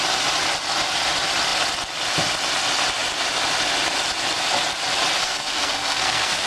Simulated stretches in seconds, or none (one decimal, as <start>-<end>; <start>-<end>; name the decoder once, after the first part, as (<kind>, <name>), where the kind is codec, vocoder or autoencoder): 5.2-6.5 (codec, SNAC)